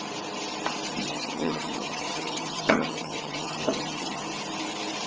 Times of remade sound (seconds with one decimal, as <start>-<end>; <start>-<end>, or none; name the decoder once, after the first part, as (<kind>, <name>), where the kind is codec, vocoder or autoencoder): 1.1-4.2 (vocoder, HiFi-GAN)